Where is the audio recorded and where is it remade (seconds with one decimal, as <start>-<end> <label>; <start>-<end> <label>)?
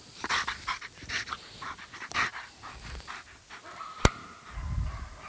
0.0-5.3 recorded